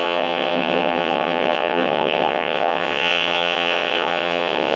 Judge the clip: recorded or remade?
remade